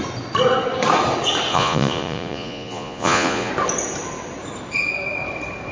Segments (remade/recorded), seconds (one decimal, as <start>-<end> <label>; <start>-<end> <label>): 0.0-1.5 recorded; 1.5-3.5 remade; 3.5-5.7 recorded